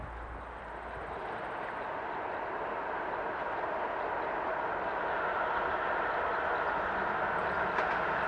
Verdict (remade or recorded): recorded